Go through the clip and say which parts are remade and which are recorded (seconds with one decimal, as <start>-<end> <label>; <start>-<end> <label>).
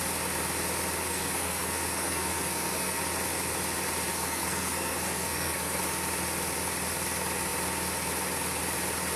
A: 0.0-1.0 recorded; 1.0-3.0 remade; 3.0-4.1 recorded; 4.1-5.8 remade; 5.8-9.2 recorded